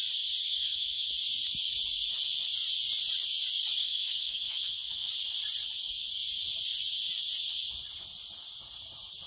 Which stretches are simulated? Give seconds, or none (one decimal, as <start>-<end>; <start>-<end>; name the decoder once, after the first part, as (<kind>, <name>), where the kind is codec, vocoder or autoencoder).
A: 0.4-1.1 (codec, SNAC); 3.8-5.1